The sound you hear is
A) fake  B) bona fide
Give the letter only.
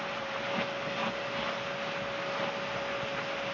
B